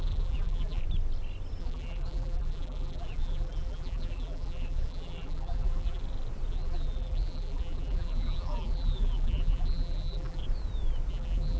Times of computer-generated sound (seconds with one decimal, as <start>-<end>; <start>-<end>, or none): 0.0-0.8; 1.6-6.0; 6.5-10.4; 11.1-11.6